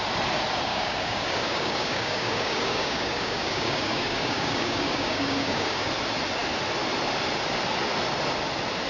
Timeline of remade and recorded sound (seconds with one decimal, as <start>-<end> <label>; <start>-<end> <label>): 0.0-0.7 recorded; 0.7-5.9 remade; 5.9-8.9 recorded